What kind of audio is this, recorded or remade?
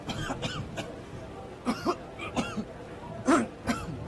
recorded